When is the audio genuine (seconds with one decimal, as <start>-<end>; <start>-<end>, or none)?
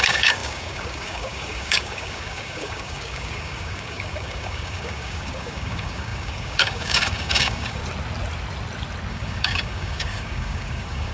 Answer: 7.8-9.1